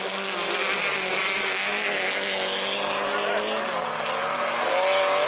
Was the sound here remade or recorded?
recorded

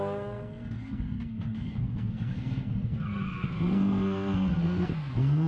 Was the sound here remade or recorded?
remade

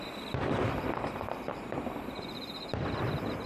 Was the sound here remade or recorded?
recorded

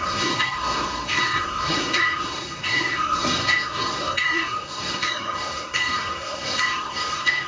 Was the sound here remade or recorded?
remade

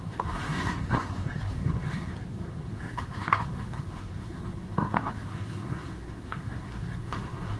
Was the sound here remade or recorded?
remade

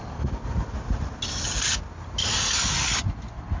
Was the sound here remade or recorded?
recorded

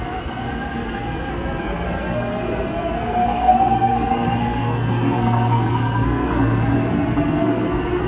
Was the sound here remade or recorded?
remade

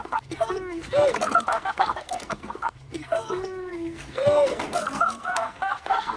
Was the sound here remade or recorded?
remade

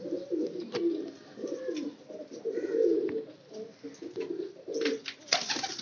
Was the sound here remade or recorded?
recorded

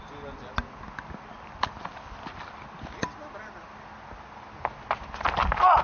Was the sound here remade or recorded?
recorded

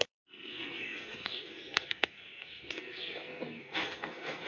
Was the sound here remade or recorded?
remade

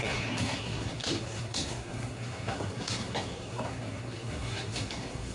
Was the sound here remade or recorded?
remade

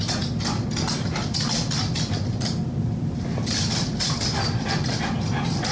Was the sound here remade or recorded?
recorded